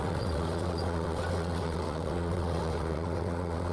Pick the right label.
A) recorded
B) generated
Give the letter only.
B